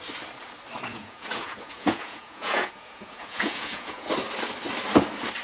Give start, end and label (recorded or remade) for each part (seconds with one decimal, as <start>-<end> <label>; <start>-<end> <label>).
0.0-0.9 recorded; 0.9-4.1 remade; 4.1-5.4 recorded